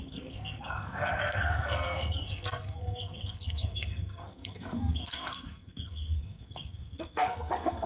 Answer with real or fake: fake